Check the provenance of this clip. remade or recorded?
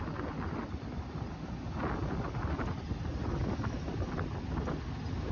recorded